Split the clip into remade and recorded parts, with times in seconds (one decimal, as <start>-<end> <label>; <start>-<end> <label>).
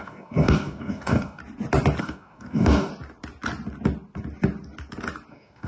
0.0-1.4 remade; 1.4-2.0 recorded; 2.0-2.9 remade; 2.9-5.3 recorded; 5.3-5.7 remade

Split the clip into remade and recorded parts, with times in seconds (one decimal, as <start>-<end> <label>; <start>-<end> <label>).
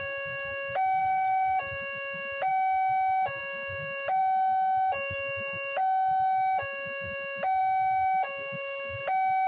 0.0-1.0 recorded; 1.0-1.6 remade; 1.6-9.5 recorded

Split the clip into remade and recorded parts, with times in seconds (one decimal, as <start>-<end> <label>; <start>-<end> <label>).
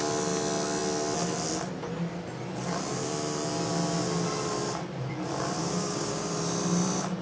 0.0-5.6 recorded; 5.6-6.3 remade; 6.3-7.2 recorded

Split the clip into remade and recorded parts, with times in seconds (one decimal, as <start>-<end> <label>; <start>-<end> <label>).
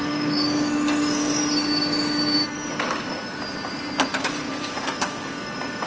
0.0-1.4 remade; 1.4-4.1 recorded; 4.1-5.9 remade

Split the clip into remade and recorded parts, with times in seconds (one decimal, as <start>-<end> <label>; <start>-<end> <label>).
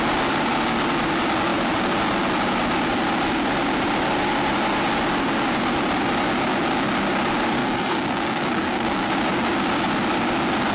0.0-7.6 recorded; 7.6-9.1 remade; 9.1-10.7 recorded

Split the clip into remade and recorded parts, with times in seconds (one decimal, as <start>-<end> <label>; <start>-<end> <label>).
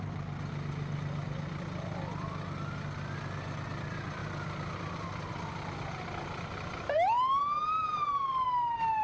0.0-9.0 recorded